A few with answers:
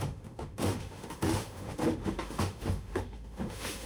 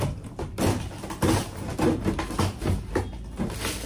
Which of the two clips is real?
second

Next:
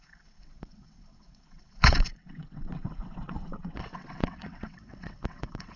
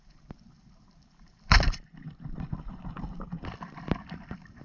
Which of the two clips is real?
second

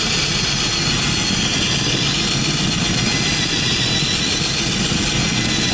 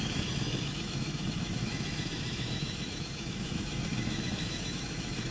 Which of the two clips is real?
first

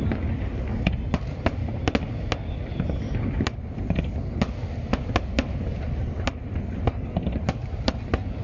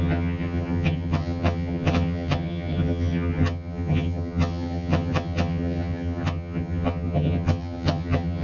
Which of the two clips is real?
first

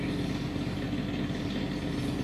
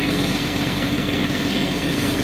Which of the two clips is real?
first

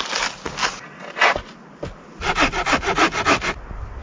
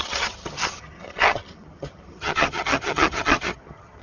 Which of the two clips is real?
first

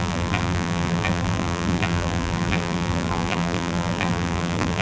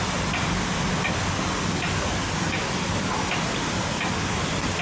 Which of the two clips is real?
second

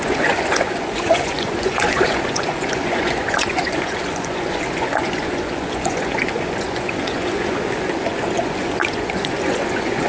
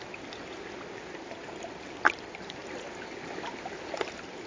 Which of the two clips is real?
second